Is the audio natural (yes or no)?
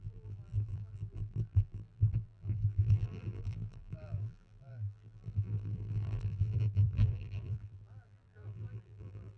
no